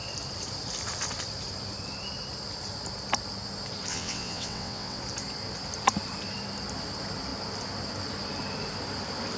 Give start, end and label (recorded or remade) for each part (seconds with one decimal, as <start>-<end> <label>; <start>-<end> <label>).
0.0-3.9 recorded; 3.9-5.0 remade; 5.0-9.4 recorded